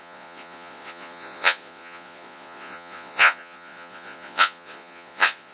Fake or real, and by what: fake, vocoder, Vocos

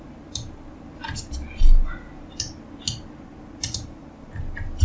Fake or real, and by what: real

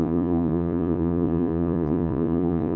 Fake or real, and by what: fake, vocoder, Vocos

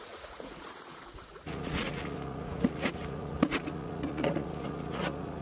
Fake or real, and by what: fake, vocoder, Vocos